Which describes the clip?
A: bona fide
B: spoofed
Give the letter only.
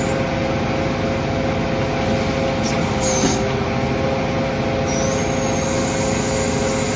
A